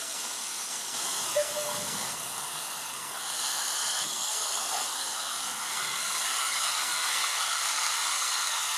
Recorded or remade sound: remade